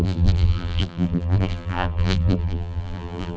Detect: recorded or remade remade